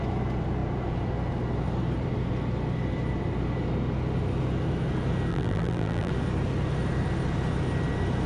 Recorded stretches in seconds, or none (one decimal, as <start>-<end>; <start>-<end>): 0.0-5.3; 6.1-8.3